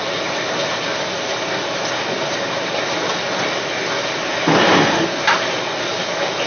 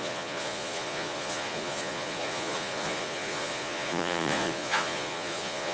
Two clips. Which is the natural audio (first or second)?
first